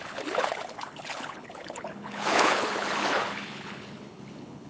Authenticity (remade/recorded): remade